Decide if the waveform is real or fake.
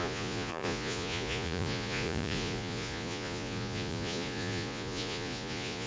fake